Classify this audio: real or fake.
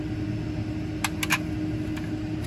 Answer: real